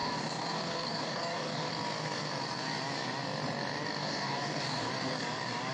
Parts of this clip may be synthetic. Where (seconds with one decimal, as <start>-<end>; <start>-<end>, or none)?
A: 0.0-1.7; 4.0-4.9